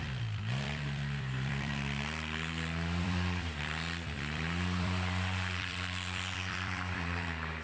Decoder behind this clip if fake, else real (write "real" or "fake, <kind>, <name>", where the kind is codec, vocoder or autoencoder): fake, vocoder, BigVGAN v2